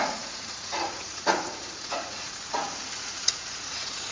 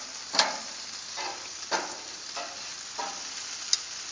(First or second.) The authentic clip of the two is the second